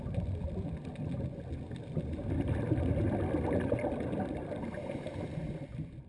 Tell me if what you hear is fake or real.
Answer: real